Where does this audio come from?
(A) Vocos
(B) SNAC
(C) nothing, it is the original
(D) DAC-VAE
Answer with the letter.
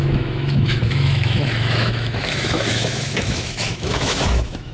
D